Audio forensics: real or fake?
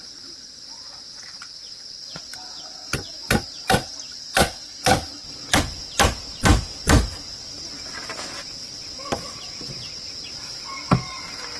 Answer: real